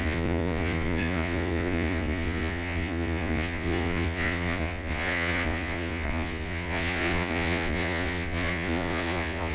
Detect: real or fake fake